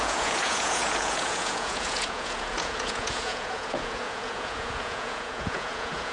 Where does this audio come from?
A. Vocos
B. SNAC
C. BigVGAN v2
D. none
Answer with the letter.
A